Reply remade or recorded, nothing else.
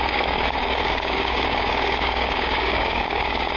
remade